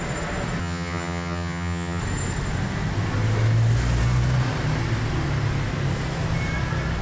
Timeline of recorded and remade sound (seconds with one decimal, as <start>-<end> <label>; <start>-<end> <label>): 0.0-0.6 recorded; 0.6-2.0 remade; 2.0-7.0 recorded